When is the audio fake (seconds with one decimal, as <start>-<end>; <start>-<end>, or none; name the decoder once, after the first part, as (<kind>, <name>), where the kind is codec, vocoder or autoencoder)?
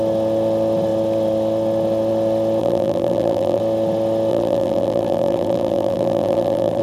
2.6-3.6 (vocoder, BigVGAN v2); 4.3-6.8